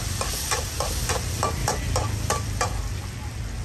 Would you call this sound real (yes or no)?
yes